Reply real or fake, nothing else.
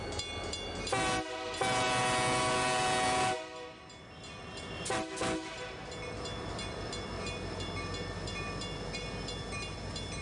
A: real